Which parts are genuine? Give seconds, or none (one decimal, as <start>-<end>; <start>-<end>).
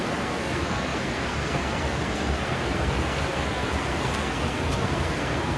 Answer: none